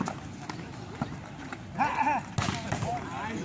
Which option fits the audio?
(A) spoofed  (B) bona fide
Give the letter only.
B